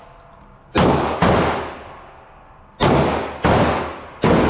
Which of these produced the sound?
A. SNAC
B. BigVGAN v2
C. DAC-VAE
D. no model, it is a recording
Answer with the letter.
D